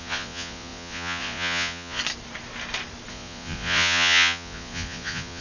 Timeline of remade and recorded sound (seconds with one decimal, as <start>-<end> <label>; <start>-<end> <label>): 0.0-2.0 remade; 2.0-3.1 recorded; 3.1-5.4 remade